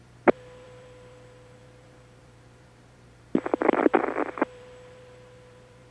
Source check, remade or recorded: remade